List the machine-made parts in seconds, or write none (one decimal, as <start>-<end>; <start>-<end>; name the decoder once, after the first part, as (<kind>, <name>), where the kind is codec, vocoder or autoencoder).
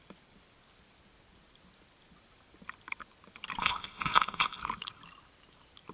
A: 3.6-4.6 (codec, ZipCodec)